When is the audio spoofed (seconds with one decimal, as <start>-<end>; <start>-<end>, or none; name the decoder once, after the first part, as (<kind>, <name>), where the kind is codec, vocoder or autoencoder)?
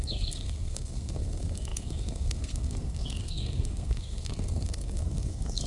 0.0-5.7 (codec, SNAC)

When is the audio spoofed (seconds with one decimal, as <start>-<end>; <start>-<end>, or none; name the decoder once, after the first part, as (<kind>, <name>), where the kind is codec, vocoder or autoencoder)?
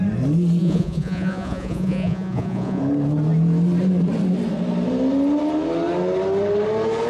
0.6-2.8 (vocoder, Vocos)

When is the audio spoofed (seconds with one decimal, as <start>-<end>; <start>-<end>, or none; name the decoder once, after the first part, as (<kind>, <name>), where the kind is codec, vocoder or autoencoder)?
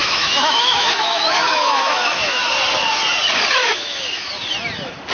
0.0-2.4 (autoencoder, DAC-VAE); 3.6-4.3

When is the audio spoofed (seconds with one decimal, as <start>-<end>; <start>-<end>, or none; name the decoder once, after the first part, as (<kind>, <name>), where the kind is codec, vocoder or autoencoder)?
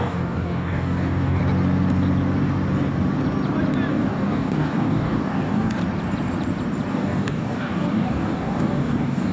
0.0-1.4 (codec, DAC); 3.9-5.8; 6.9-9.3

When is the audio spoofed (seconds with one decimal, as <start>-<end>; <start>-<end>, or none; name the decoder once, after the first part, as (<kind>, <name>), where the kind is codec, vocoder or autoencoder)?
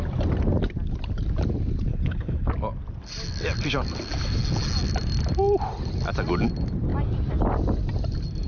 1.9-2.5 (codec, HILCodec)